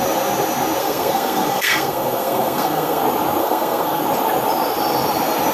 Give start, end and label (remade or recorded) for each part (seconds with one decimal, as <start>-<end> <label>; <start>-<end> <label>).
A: 0.0-0.8 recorded; 0.8-3.0 remade; 3.0-3.4 recorded; 3.4-4.0 remade; 4.0-5.5 recorded